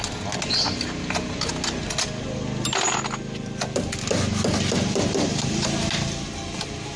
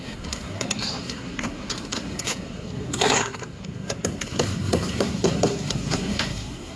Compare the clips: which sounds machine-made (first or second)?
second